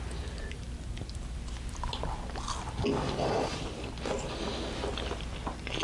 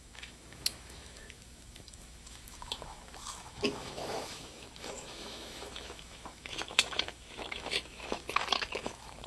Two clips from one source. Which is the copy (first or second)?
second